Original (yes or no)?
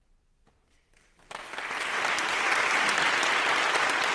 yes